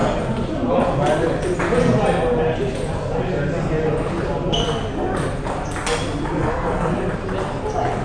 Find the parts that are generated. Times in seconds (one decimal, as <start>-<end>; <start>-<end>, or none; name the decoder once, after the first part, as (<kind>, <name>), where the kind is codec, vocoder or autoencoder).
6.4-6.9 (codec, SNAC)